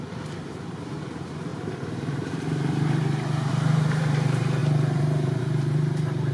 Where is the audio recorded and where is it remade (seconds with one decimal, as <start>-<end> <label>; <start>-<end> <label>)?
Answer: 0.0-6.3 remade